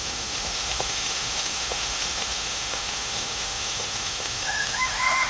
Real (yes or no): no